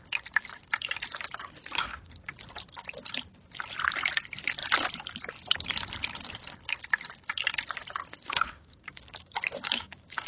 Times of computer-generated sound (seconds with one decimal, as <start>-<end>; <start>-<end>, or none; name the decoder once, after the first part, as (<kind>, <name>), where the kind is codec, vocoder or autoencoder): 8.1-10.3 (codec, DAC)